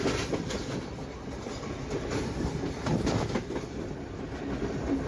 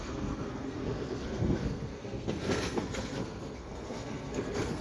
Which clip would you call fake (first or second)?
second